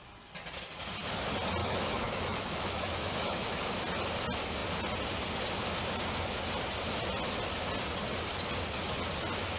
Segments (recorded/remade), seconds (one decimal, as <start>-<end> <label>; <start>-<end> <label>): 0.0-1.6 recorded; 1.6-3.6 remade; 3.6-9.6 recorded